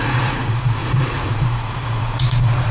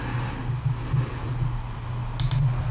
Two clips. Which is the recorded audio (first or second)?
second